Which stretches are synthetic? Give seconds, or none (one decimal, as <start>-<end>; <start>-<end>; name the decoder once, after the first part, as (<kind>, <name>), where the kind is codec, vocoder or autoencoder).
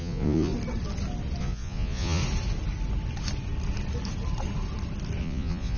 0.0-0.5 (vocoder, Vocos); 1.4-2.2; 5.2-5.8